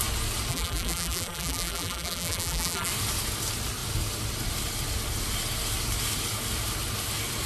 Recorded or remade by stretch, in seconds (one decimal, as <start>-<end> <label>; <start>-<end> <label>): 0.0-0.5 recorded; 0.5-2.9 remade; 2.9-7.5 recorded